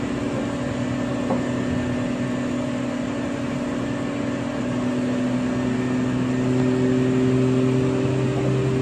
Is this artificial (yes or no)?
no